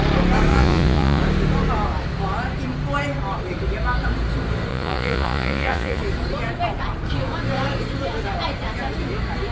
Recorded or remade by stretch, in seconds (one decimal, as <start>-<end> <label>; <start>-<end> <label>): 0.0-0.5 recorded; 0.5-1.2 remade; 1.2-4.7 recorded; 4.7-6.0 remade; 6.0-9.5 recorded